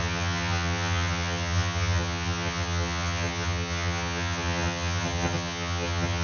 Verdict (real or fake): fake